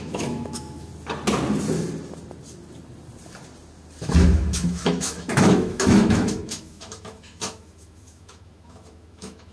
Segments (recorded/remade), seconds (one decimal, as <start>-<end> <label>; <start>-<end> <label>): 0.0-0.9 remade; 0.9-4.0 recorded; 4.0-9.5 remade